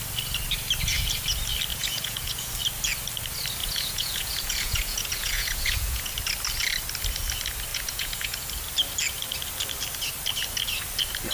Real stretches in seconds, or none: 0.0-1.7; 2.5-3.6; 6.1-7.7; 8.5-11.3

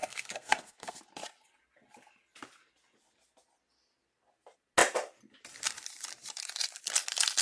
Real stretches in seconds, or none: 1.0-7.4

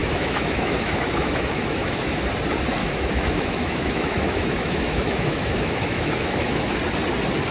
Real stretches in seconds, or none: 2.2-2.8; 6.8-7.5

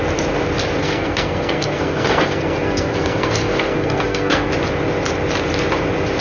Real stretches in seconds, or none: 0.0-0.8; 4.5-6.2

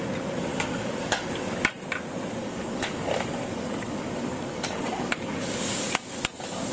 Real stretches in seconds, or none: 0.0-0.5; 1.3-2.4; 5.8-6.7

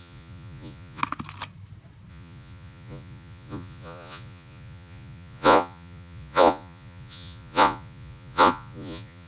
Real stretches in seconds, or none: 1.0-2.1